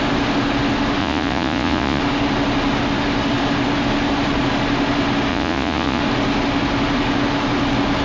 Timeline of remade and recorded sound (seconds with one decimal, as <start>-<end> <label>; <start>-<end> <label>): 0.0-1.0 recorded; 1.0-2.0 remade; 2.0-5.3 recorded; 5.3-6.0 remade; 6.0-8.0 recorded